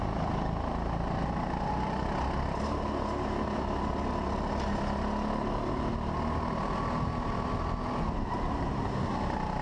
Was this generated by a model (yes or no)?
no